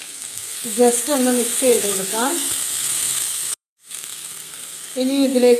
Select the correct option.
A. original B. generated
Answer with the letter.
B